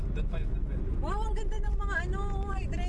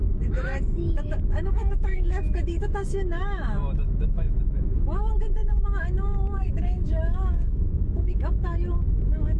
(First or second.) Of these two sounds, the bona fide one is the first